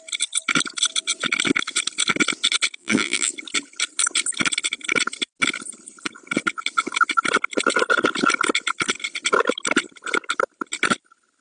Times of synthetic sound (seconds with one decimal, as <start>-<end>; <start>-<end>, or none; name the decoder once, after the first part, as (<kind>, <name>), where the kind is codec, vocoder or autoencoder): 2.8-3.3 (vocoder, BigVGAN v2)

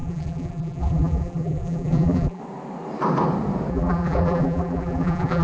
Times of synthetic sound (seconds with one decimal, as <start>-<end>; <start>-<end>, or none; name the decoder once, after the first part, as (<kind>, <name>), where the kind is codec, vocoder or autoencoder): 0.0-2.4 (vocoder, BigVGAN v2); 3.7-5.4

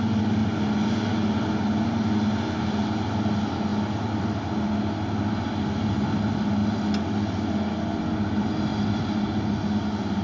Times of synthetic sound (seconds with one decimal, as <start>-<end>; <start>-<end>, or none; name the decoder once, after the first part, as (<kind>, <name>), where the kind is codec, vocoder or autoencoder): 3.7-4.7 (vocoder, BigVGAN v2); 8.7-9.3

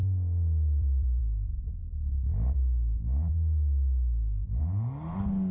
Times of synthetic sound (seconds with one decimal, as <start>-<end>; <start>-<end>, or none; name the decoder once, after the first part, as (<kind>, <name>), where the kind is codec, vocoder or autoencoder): 0.0-1.2 (vocoder, BigVGAN v2)

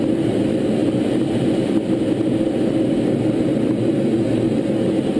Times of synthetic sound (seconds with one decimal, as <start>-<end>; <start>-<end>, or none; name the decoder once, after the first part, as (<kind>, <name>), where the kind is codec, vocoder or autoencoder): none

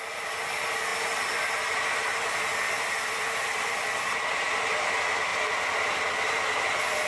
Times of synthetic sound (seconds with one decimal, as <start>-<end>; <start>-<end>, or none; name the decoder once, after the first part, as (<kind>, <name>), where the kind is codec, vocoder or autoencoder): 3.5-4.8 (vocoder, BigVGAN v2)